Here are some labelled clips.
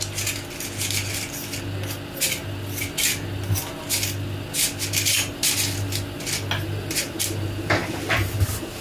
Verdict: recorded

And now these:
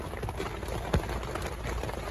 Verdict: recorded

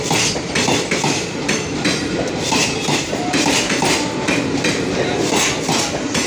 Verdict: remade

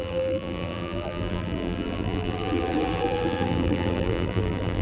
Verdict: remade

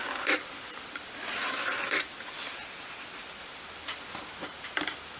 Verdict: remade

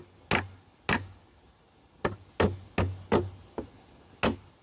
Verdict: recorded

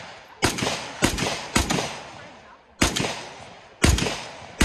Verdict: recorded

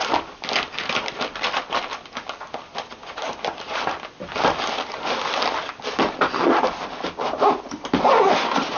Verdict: recorded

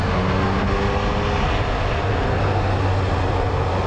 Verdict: recorded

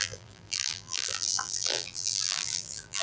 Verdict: remade